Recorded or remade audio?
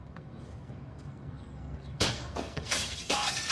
remade